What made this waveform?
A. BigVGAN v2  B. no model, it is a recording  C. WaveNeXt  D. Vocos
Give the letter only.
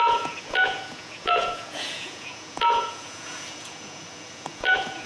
D